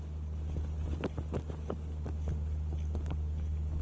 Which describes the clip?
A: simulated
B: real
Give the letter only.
B